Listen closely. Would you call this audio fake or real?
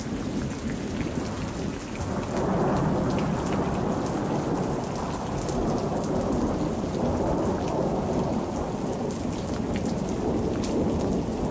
real